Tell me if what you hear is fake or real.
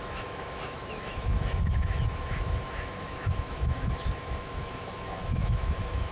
fake